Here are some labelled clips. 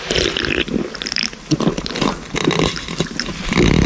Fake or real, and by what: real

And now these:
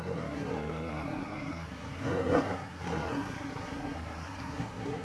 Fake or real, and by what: fake, codec, SNAC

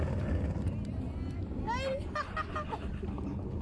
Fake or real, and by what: real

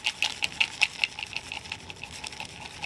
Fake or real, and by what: real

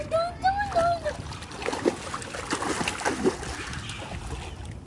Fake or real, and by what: real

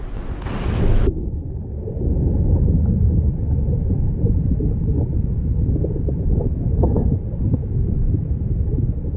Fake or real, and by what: real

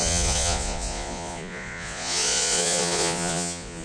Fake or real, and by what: fake, vocoder, Vocos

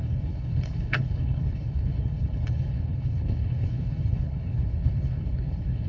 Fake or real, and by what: fake, codec, HILCodec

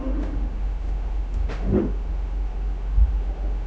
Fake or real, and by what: fake, autoencoder, DAC-VAE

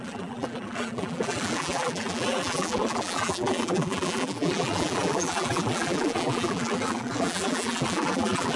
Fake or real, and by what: fake, vocoder, BigVGAN v2